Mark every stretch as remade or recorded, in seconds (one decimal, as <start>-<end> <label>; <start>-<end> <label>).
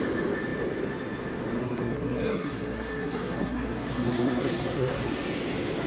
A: 0.0-1.6 recorded; 1.6-5.1 remade; 5.1-5.9 recorded